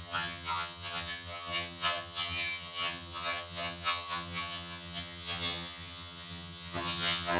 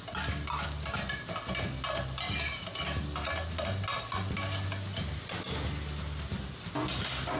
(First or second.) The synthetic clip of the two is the first